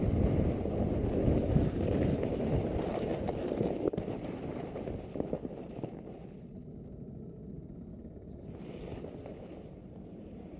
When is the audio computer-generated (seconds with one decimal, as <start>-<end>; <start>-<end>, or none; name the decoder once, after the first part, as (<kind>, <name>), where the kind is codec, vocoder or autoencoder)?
none